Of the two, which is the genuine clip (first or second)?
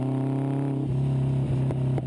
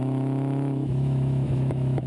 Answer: first